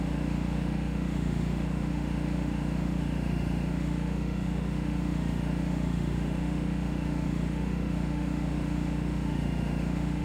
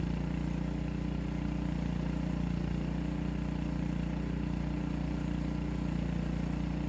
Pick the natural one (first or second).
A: second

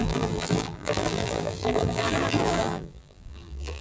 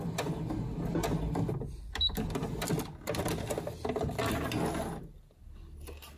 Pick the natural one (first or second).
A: second